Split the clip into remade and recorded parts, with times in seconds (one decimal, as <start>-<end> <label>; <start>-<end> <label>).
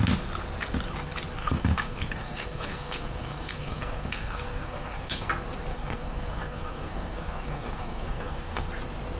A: 0.0-1.4 recorded; 1.4-5.3 remade; 5.3-5.7 recorded; 5.7-8.7 remade; 8.7-9.2 recorded